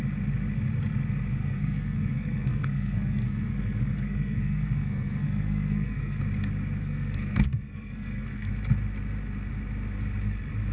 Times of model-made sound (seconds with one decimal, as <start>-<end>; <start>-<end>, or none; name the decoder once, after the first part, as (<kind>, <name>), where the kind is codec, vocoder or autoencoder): 1.4-6.2 (codec, SNAC); 6.8-8.5